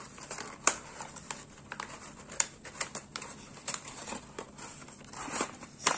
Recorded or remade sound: remade